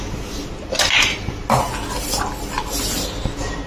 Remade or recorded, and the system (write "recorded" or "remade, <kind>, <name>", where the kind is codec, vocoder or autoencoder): recorded